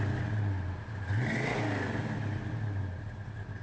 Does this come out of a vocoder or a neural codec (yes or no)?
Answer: no